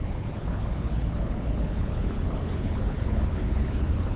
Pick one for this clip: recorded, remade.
remade